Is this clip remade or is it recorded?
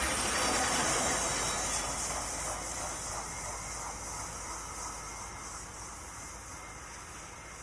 recorded